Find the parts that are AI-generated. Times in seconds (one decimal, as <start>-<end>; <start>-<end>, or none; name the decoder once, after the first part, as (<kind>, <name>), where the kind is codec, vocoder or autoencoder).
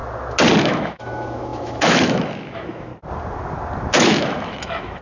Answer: 0.6-2.9 (autoencoder, DAC-VAE); 3.9-5.0